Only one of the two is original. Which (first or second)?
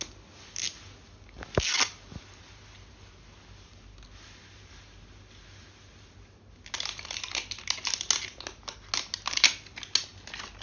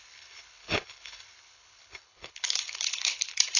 first